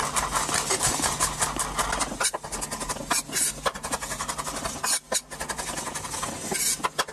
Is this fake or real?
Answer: real